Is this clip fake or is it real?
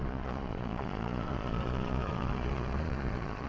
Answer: fake